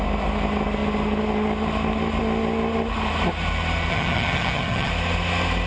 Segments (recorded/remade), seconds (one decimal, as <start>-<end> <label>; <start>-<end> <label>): 0.0-3.9 recorded; 3.9-4.9 remade; 4.9-5.7 recorded